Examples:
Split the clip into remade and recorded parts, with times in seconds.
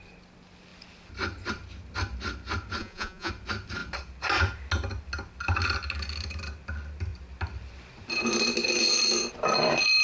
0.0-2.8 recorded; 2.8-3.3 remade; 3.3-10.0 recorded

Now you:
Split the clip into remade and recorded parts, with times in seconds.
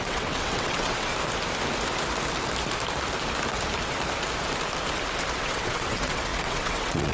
0.0-1.1 remade; 1.1-5.4 recorded; 5.4-7.1 remade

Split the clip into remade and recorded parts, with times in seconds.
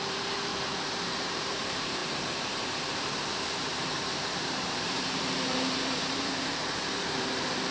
0.0-0.5 remade; 0.5-1.0 recorded; 1.0-7.7 remade